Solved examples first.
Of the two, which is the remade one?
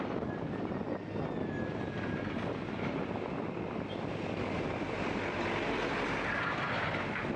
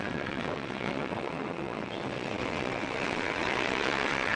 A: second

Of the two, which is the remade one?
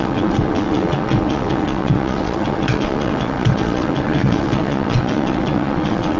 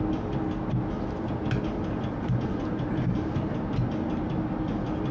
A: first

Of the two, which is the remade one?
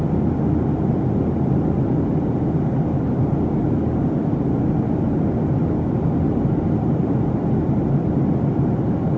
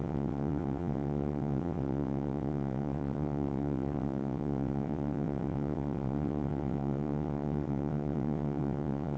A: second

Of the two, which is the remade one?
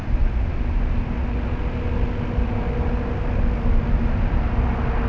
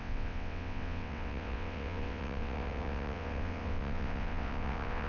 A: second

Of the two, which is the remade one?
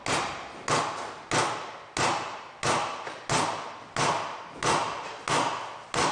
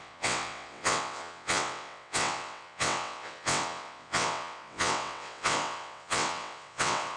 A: second